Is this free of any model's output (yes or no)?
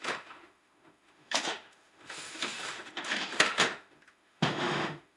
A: no